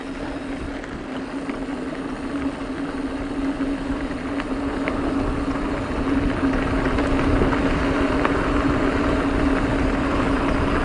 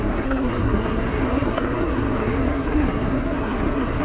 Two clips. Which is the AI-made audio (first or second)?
second